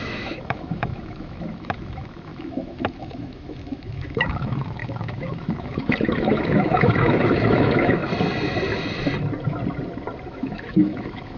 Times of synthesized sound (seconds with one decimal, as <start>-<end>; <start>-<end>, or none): 0.0-8.0; 10.3-11.4